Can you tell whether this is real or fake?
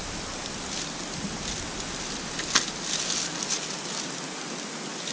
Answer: real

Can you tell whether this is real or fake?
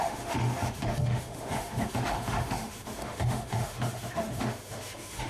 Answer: fake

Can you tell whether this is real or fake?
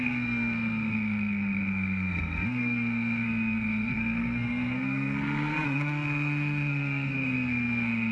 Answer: fake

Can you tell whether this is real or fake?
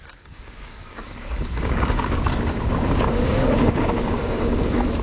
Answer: fake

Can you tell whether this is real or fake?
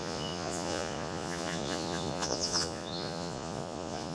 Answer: fake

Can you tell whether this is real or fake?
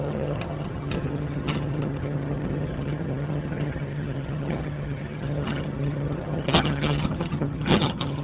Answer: fake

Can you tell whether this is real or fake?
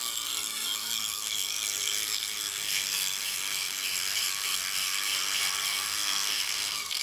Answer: fake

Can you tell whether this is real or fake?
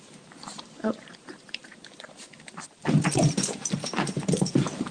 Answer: fake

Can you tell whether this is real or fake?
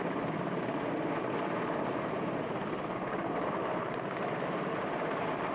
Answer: real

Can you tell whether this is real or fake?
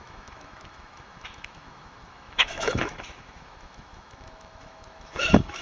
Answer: fake